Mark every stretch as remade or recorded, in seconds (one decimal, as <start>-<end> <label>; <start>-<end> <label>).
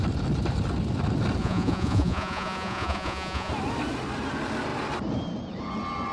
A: 0.0-1.4 recorded; 1.4-3.5 remade; 3.5-6.1 recorded